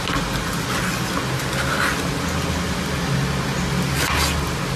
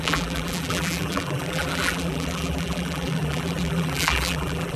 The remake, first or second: second